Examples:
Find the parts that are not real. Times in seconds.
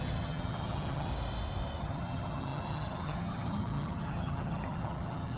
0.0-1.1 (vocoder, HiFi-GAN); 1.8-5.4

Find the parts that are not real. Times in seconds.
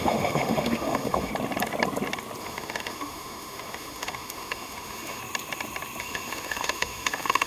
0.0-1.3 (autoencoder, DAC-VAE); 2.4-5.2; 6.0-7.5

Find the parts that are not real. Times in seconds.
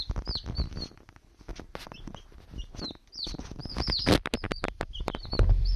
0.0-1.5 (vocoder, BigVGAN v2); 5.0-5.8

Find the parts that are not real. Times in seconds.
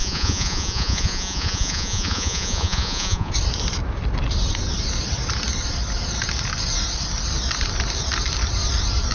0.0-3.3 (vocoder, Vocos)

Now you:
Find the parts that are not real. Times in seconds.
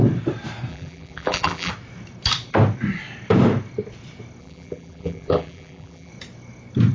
0.7-1.7 (vocoder, BigVGAN v2); 4.4-6.1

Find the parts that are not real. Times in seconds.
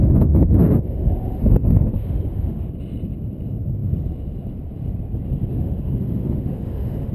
0.0-2.7 (autoencoder, DAC-VAE); 5.5-7.1